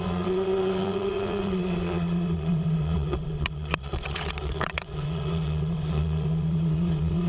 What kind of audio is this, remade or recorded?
remade